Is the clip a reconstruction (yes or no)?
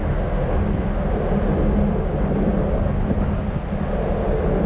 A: no